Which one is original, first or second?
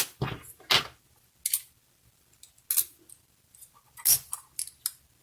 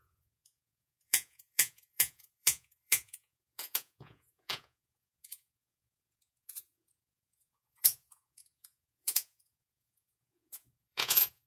first